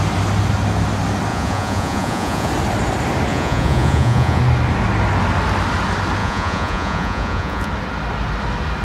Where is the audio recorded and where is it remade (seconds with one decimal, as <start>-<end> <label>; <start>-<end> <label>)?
0.0-1.3 recorded; 1.3-2.5 remade; 2.5-3.3 recorded; 3.3-4.4 remade; 4.4-6.2 recorded; 6.2-7.7 remade; 7.7-8.8 recorded